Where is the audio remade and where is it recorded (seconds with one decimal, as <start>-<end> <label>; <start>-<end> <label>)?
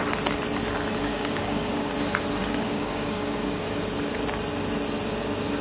0.0-1.0 recorded; 1.0-1.9 remade; 1.9-2.4 recorded; 2.4-3.8 remade; 3.8-5.6 recorded